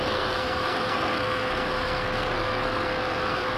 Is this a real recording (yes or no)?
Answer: no